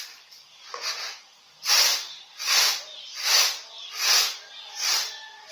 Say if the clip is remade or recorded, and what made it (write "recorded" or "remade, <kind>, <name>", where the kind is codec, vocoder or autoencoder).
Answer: recorded